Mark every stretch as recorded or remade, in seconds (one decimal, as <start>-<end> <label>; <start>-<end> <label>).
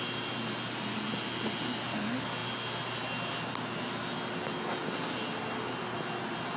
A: 0.0-6.6 recorded